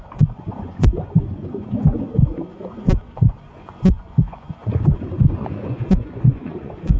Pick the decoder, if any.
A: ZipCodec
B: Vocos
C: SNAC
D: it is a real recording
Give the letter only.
B